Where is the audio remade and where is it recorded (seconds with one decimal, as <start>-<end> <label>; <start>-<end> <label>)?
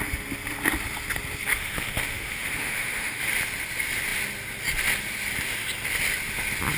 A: 0.0-1.5 recorded; 1.5-3.2 remade; 3.2-6.8 recorded